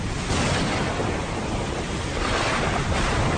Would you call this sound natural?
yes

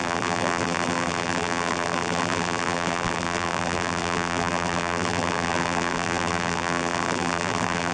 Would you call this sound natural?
no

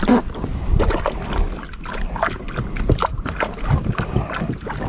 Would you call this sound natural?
yes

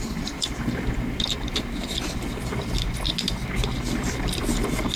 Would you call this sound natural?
no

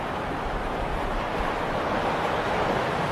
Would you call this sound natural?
yes